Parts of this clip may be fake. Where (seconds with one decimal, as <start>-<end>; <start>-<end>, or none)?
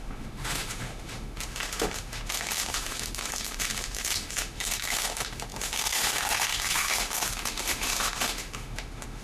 0.0-9.2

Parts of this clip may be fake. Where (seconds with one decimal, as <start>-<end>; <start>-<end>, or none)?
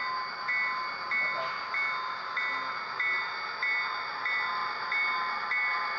none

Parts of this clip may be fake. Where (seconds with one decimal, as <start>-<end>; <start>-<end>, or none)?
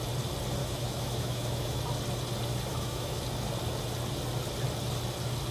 0.6-1.8; 2.7-3.2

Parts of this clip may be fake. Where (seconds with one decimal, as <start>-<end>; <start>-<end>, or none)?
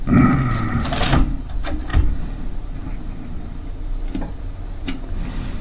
none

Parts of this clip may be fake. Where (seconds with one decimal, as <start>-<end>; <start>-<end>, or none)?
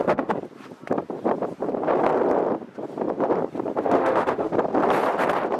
0.0-0.4; 3.8-4.5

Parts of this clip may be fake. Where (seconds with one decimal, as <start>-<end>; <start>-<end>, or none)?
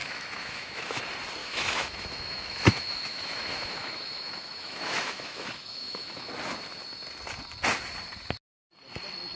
0.0-1.0; 1.4-6.3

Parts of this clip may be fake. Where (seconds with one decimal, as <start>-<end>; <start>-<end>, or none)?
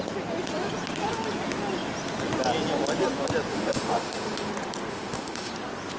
3.5-4.5; 4.9-5.5